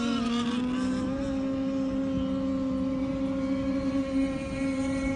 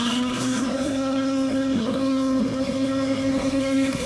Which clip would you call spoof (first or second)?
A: second